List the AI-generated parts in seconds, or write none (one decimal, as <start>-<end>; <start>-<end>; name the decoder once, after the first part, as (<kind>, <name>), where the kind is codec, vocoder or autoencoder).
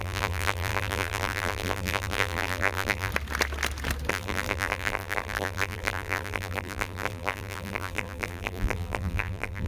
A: 0.0-3.1 (vocoder, BigVGAN v2); 4.1-9.7